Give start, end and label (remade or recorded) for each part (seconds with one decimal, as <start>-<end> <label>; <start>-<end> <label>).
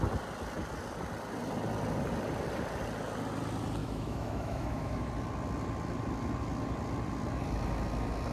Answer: 0.0-3.8 recorded; 3.8-5.1 remade; 5.1-8.3 recorded